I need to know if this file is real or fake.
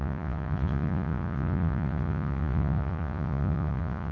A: fake